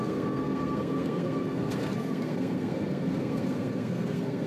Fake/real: fake